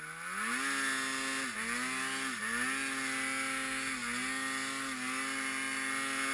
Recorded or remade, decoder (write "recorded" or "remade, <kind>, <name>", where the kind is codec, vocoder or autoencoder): recorded